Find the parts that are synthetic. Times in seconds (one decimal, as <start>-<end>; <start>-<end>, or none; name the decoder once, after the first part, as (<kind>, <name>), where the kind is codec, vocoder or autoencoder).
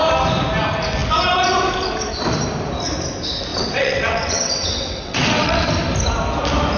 3.5-5.7 (vocoder, WaveNeXt)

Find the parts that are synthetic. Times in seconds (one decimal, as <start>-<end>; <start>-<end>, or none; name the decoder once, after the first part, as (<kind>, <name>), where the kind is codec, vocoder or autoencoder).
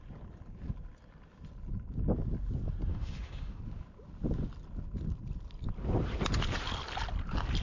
2.9-3.6 (autoencoder, DAC-VAE)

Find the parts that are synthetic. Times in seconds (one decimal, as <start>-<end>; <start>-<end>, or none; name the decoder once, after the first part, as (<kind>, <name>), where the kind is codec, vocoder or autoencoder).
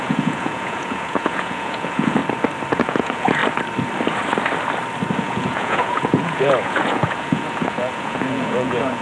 0.0-2.2 (vocoder, Vocos); 2.7-3.4; 5.2-9.0